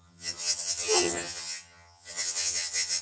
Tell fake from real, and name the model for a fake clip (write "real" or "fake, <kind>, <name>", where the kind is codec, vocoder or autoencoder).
fake, vocoder, HiFi-GAN